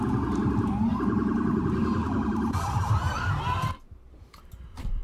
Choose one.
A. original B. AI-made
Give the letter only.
B